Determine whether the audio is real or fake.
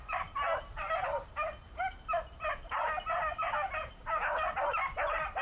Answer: real